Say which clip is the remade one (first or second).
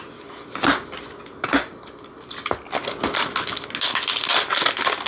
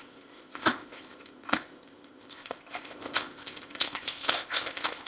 second